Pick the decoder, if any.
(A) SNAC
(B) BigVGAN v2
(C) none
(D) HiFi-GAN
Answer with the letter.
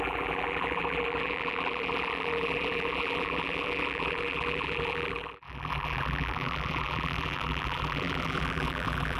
B